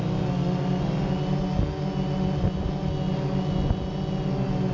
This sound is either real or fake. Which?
real